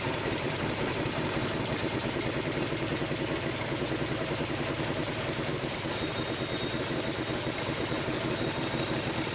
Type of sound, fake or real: fake